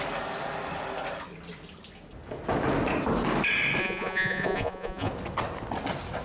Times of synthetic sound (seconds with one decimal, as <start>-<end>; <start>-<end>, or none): 3.8-5.1